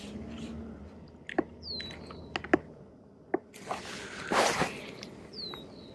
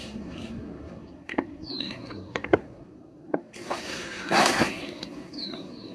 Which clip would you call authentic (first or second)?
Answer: first